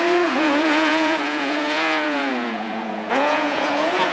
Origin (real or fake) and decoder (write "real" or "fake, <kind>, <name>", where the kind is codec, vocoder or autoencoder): fake, vocoder, Vocos